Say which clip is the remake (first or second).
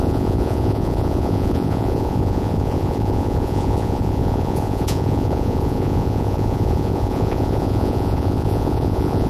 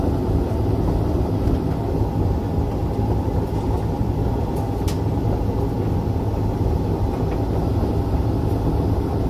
first